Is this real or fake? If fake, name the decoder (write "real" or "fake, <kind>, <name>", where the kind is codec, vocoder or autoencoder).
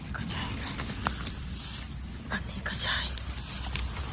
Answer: real